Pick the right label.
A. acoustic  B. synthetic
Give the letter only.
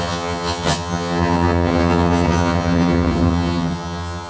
B